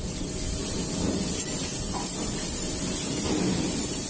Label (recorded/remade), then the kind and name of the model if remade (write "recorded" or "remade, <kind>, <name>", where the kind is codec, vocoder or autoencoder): recorded